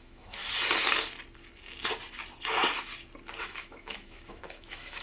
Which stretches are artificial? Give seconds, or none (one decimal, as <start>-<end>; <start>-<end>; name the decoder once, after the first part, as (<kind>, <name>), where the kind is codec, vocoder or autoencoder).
0.0-0.4 (autoencoder, DAC-VAE); 3.4-5.0